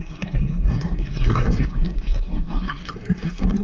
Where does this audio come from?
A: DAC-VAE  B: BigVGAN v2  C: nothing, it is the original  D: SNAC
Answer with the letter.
D